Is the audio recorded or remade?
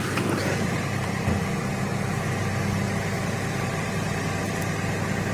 recorded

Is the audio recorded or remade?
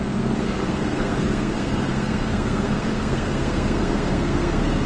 remade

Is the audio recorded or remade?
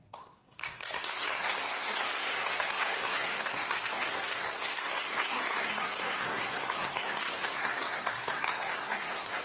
remade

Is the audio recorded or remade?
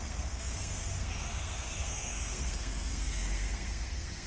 remade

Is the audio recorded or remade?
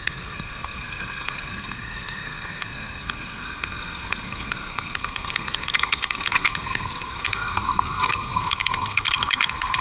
remade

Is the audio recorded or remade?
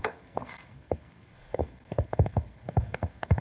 remade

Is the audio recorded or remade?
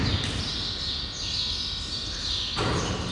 recorded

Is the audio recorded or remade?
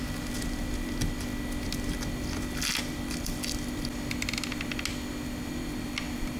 recorded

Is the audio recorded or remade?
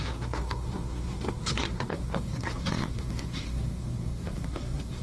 remade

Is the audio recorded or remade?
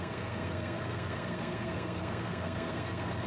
remade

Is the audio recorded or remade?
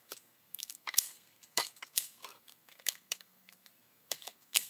remade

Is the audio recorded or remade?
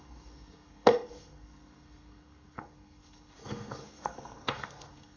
remade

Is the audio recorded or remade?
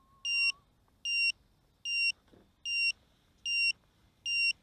recorded